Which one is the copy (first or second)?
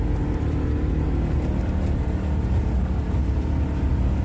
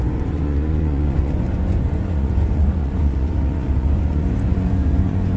second